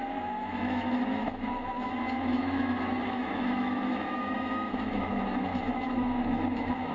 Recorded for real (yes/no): no